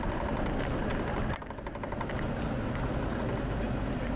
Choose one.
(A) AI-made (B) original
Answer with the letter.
B